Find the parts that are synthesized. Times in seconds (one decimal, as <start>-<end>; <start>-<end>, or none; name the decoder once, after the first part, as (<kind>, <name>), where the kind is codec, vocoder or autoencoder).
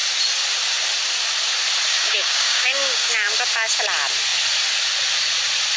1.9-3.1 (codec, DAC)